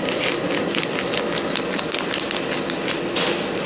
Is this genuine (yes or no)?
yes